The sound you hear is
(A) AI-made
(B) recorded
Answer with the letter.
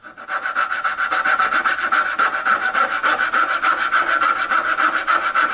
B